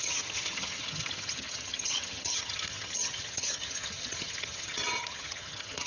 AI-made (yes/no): yes